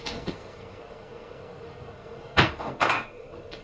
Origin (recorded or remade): remade